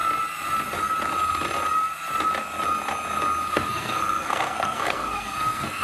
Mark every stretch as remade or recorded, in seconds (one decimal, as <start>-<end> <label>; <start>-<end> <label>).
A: 0.0-3.5 recorded; 3.5-5.8 remade